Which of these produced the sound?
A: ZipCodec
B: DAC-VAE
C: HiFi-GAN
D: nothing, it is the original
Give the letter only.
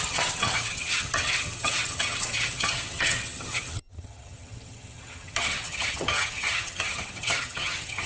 C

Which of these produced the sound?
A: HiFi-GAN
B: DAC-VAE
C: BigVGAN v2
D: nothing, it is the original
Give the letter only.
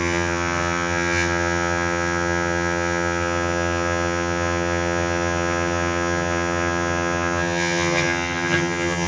A